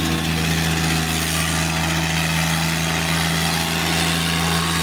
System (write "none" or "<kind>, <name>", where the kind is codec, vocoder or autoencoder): none